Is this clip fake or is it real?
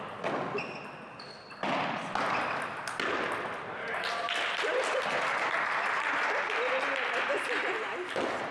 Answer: real